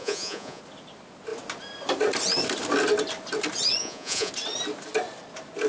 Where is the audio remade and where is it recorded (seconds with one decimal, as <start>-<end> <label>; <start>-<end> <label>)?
0.0-0.6 remade; 0.6-3.8 recorded; 3.8-4.3 remade; 4.3-5.7 recorded